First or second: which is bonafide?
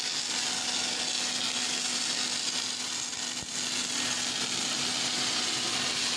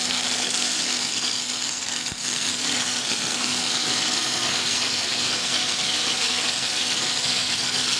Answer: first